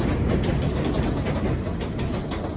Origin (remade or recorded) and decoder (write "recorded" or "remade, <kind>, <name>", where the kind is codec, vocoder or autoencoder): recorded